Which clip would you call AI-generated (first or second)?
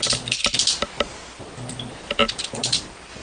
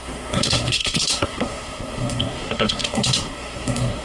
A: second